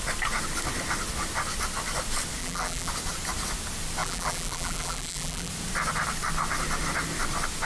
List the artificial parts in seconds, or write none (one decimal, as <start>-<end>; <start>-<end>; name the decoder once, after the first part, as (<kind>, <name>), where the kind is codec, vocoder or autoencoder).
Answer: 2.4-2.9 (vocoder, BigVGAN v2); 4.0-5.5